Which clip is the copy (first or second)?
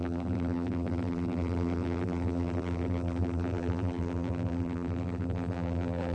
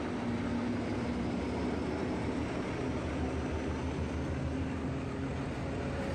first